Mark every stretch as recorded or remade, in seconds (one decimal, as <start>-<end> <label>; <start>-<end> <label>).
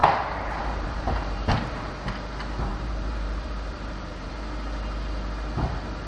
0.0-1.9 remade; 1.9-2.7 recorded; 2.7-4.3 remade; 4.3-6.1 recorded